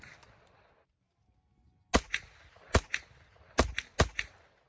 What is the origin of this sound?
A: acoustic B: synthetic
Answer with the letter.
A